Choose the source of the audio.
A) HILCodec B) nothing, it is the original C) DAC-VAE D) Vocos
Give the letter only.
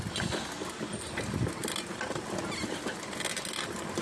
B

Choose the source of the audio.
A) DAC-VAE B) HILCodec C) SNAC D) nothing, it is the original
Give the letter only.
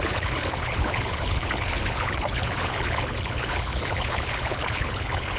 B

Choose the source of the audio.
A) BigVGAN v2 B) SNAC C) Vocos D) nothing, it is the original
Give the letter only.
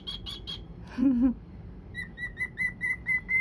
D